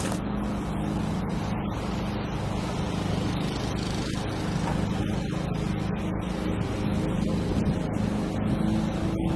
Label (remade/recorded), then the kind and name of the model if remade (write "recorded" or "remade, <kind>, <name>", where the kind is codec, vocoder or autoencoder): recorded